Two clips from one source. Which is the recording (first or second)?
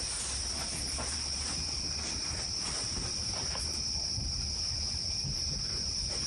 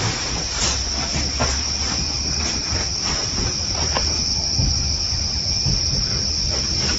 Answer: second